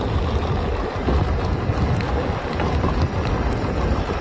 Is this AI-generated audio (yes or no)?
no